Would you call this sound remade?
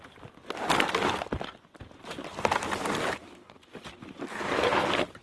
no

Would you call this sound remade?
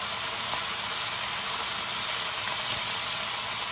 no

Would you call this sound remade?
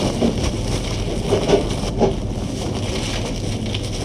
no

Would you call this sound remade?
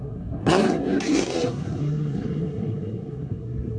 yes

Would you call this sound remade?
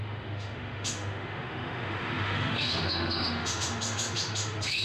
yes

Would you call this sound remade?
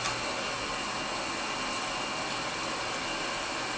no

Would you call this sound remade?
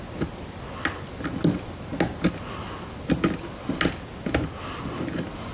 no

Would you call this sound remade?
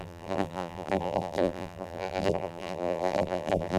yes